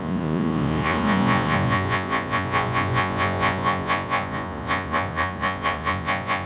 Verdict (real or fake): fake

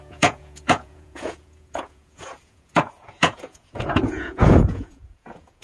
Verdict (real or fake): fake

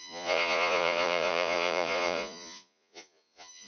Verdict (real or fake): fake